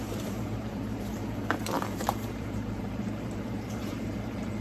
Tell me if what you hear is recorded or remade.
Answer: remade